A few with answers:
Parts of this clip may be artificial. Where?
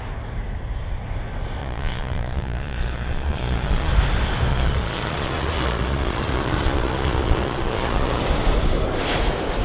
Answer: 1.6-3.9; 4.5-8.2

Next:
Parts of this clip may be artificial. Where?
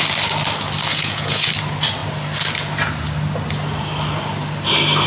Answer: 0.9-1.5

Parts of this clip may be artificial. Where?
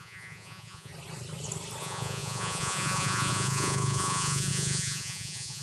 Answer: 0.0-0.9; 1.8-5.6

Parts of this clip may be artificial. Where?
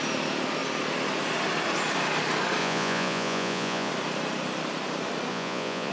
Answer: 2.6-3.9; 5.3-5.9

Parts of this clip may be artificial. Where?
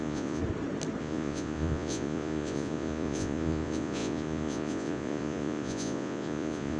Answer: 0.0-0.4; 1.0-6.8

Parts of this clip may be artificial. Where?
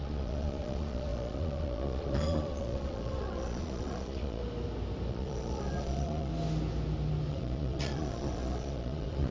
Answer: 0.0-4.4; 5.1-6.3; 7.3-9.3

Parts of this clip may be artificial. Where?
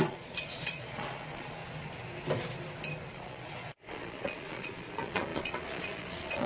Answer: 0.0-1.6; 3.1-6.5